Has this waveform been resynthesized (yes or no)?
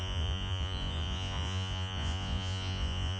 yes